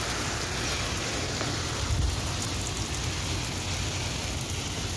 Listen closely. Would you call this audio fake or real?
real